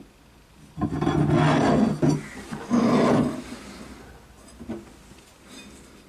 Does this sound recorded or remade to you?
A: recorded